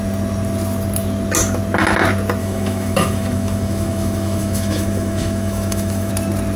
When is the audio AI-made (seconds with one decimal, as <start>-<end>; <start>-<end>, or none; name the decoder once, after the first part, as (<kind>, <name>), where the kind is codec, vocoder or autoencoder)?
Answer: 2.4-6.1 (autoencoder, DAC-VAE)